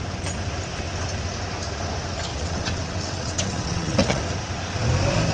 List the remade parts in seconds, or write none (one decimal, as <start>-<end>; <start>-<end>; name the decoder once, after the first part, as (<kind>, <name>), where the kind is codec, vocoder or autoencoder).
2.3-4.2 (vocoder, WaveNeXt)